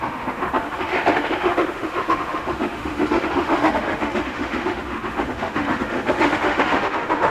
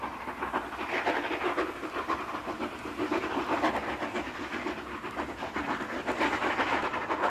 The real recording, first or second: second